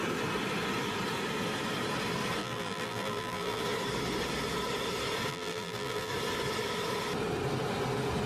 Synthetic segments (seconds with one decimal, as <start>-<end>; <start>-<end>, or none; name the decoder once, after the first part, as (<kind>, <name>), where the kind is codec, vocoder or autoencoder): 2.4-3.6 (vocoder, BigVGAN v2); 5.3-6.1